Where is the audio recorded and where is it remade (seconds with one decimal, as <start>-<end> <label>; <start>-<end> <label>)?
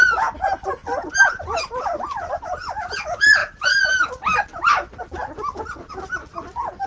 0.0-6.9 recorded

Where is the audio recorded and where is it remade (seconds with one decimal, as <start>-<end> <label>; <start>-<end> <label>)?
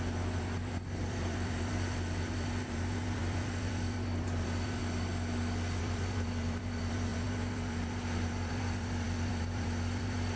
0.0-4.8 remade; 4.8-5.8 recorded; 5.8-10.4 remade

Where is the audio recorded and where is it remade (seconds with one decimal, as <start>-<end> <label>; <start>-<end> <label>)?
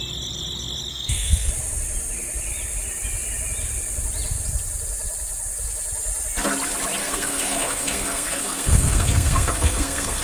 0.0-0.9 recorded; 0.9-1.5 remade; 1.5-7.0 recorded; 7.0-10.2 remade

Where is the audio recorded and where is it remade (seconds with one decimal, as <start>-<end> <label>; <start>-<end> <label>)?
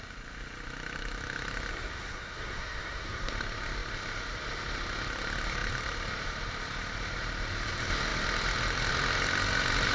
0.0-1.7 recorded; 1.7-3.3 remade; 3.3-9.9 recorded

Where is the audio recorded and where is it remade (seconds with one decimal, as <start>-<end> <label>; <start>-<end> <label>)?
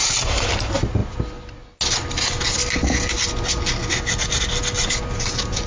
0.0-5.7 recorded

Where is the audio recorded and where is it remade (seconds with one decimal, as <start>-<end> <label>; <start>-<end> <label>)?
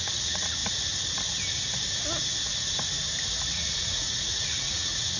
0.0-0.6 remade; 0.6-3.5 recorded; 3.5-5.2 remade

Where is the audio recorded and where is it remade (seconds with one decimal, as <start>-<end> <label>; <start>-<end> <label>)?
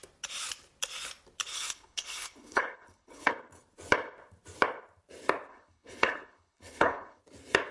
0.0-1.5 recorded; 1.5-3.3 remade; 3.3-5.5 recorded; 5.5-7.2 remade; 7.2-7.7 recorded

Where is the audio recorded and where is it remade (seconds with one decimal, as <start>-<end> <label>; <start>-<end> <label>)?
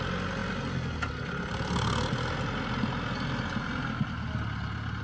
0.0-5.0 recorded